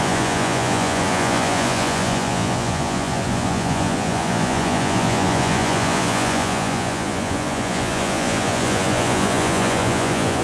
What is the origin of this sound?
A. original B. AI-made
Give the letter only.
B